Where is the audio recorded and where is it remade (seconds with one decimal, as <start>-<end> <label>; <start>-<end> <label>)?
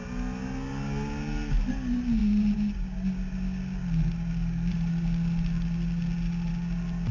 0.0-7.1 recorded